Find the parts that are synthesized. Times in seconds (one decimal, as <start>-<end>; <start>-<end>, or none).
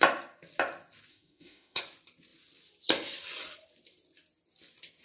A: 1.1-1.8